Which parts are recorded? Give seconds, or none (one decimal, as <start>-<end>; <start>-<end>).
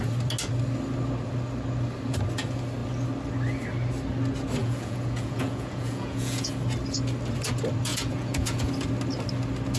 0.0-4.6; 6.5-7.9; 8.7-9.8